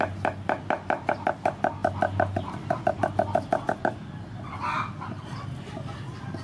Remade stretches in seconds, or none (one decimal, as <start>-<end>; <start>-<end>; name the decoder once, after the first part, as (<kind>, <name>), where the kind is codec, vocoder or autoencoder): none